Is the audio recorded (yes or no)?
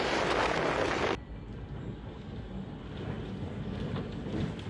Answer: yes